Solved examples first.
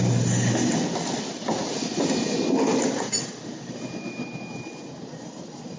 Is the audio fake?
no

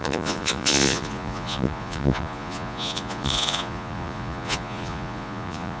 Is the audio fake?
yes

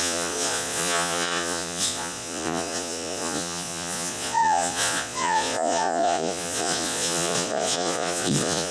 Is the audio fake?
yes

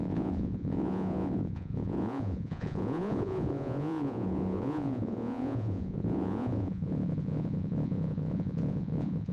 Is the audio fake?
yes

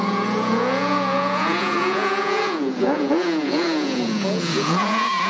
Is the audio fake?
yes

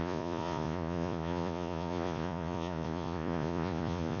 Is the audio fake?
yes